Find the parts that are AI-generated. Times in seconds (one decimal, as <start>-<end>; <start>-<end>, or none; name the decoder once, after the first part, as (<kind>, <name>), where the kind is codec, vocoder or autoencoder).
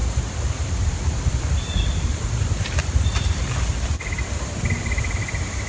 0.0-5.7 (vocoder, BigVGAN v2)